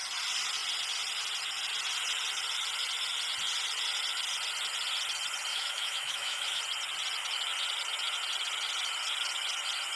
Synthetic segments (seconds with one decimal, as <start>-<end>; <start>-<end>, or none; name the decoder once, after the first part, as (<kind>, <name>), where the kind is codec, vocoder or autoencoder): 5.5-6.6 (autoencoder, DAC-VAE)

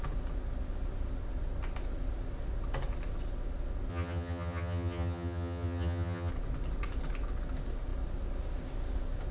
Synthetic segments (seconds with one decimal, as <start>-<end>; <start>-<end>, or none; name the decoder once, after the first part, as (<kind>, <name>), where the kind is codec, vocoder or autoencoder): 3.9-6.3 (vocoder, HiFi-GAN)

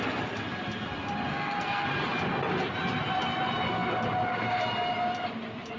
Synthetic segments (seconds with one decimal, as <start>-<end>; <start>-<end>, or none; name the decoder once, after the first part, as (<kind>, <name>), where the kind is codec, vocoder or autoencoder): 1.3-1.9 (codec, SNAC)

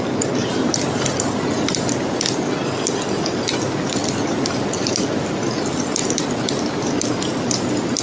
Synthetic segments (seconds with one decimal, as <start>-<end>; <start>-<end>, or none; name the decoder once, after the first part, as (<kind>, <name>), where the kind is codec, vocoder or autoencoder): 0.4-1.1 (vocoder, BigVGAN v2)

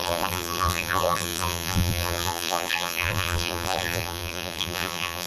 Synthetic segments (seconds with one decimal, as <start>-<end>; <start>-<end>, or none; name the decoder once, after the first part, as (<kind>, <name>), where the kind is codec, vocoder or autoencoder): 0.0-5.3 (vocoder, BigVGAN v2)

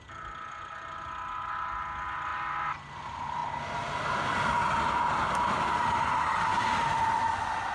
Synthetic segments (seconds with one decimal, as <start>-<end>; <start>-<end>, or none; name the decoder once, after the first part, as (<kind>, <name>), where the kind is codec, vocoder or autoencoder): none

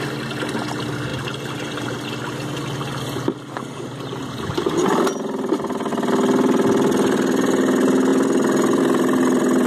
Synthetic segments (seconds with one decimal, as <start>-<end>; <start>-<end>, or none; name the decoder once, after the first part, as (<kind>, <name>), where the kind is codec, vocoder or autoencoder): none